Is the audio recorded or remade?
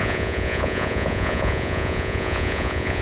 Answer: remade